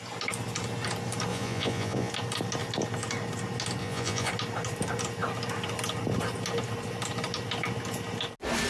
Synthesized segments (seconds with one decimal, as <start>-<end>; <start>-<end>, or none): 1.3-2.1; 3.8-4.3